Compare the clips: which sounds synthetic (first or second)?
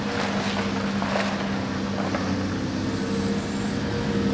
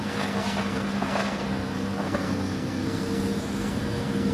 second